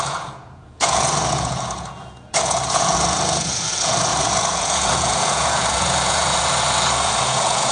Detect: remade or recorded remade